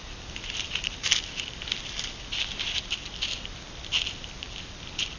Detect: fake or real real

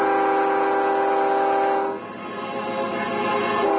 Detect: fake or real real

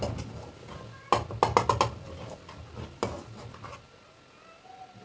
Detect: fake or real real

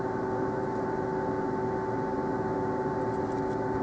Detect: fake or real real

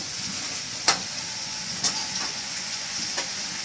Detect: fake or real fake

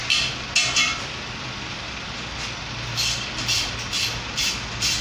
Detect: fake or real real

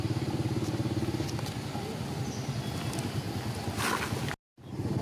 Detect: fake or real real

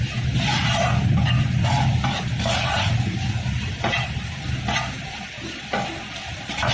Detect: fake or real real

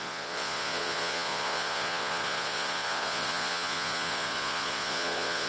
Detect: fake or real fake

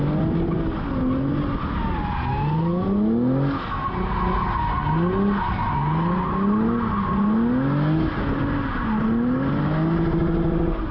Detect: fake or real real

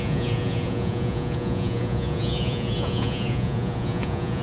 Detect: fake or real fake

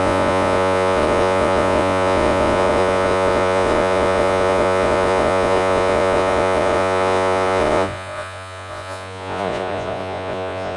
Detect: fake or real fake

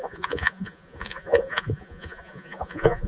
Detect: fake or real fake